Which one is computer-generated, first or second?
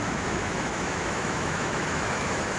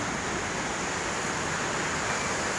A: first